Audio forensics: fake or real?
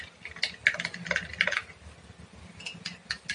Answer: real